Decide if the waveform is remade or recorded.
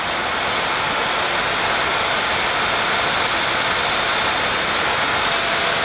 recorded